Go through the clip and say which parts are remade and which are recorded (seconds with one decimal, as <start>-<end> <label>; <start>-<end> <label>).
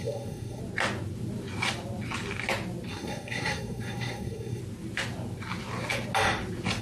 0.0-0.6 remade; 0.6-2.9 recorded; 2.9-4.6 remade; 4.6-6.8 recorded